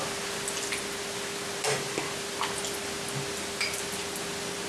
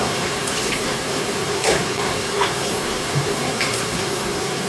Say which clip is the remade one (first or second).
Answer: second